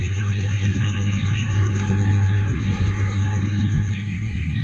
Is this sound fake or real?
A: fake